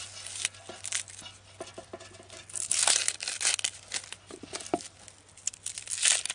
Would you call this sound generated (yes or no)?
no